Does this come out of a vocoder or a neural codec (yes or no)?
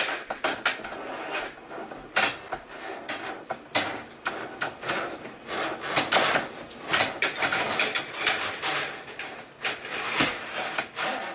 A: no